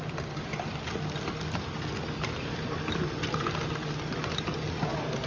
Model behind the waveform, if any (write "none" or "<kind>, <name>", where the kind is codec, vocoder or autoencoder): none